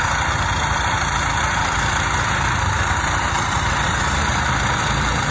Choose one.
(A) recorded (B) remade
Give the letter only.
B